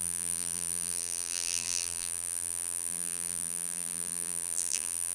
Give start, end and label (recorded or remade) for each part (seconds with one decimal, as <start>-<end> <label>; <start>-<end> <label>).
0.0-5.1 remade